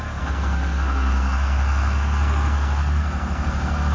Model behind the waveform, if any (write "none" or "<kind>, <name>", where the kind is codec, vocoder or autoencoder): codec, SNAC